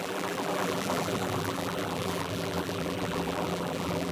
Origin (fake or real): fake